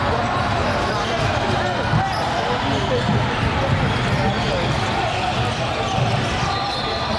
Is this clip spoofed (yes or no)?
no